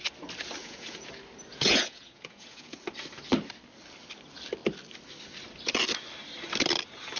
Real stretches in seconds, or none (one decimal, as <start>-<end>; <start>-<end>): 0.0-0.6; 1.1-1.5; 2.8-7.2